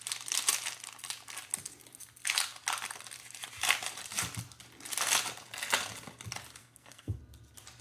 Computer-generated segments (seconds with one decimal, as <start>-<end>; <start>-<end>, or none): 6.6-7.2